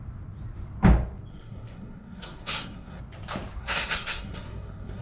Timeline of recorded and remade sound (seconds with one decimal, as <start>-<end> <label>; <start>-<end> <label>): 0.0-1.3 recorded; 1.3-3.0 remade; 3.0-3.6 recorded; 3.6-5.0 remade